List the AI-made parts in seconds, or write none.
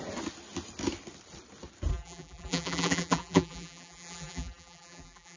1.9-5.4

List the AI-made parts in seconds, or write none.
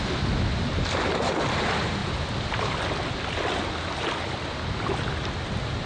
none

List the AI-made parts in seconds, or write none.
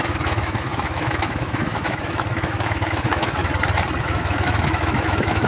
0.0-3.4; 4.0-5.5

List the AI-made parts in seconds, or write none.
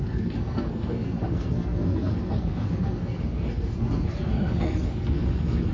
0.0-5.7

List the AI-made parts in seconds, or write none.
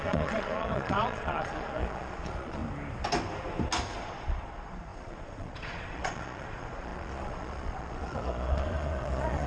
0.0-2.6; 3.9-9.5